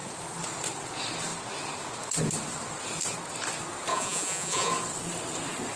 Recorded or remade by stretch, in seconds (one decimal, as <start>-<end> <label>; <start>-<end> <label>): 0.0-3.9 recorded; 3.9-4.7 remade; 4.7-5.8 recorded